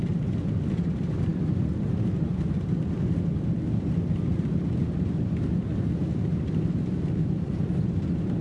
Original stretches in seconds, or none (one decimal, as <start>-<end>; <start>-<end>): 0.0-8.4